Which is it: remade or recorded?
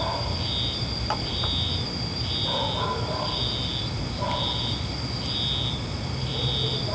recorded